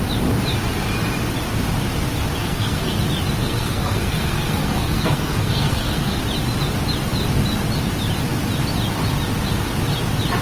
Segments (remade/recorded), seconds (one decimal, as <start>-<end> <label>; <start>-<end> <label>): 0.0-2.4 recorded; 2.4-3.0 remade; 3.0-3.4 recorded; 3.4-6.2 remade; 6.2-10.4 recorded